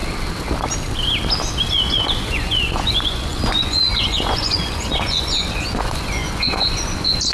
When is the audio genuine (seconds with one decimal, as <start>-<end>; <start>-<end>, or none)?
0.0-1.7